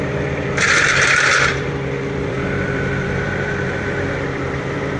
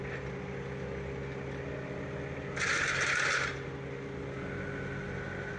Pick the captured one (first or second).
second